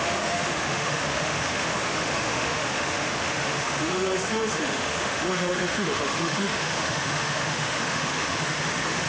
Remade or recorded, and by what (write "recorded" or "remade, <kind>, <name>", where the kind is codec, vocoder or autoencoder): remade, autoencoder, DAC-VAE